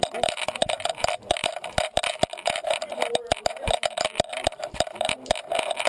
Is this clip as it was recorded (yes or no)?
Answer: yes